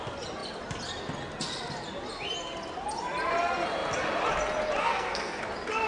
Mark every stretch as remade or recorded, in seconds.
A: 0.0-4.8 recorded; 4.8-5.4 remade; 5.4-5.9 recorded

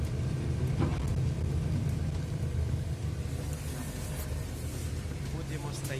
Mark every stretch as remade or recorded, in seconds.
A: 0.0-6.0 recorded